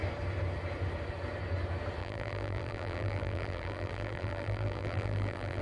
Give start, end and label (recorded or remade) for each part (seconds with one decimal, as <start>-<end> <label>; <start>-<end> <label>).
0.0-2.0 recorded; 2.0-5.6 remade